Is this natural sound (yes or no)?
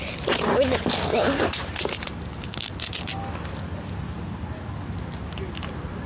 yes